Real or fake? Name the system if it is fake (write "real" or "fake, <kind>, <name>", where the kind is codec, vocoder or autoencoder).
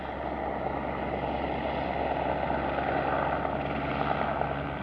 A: real